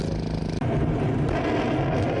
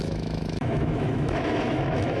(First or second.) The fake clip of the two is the second